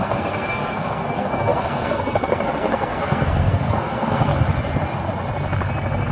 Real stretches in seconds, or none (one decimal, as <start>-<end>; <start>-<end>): 4.3-6.1